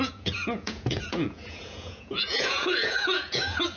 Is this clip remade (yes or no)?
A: yes